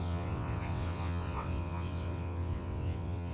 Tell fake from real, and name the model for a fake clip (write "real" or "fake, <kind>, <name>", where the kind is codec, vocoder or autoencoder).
fake, vocoder, WaveNeXt